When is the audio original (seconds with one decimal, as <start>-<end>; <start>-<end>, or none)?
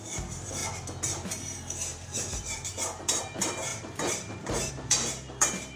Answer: 0.6-1.1